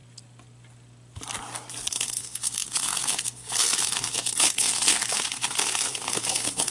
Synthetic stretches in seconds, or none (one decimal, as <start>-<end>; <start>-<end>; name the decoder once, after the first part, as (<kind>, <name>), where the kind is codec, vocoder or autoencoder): 1.9-6.7 (codec, SNAC)